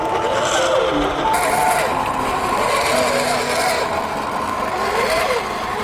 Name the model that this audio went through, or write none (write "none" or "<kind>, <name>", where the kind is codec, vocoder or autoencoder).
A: none